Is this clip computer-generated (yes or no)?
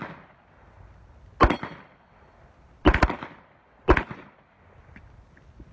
no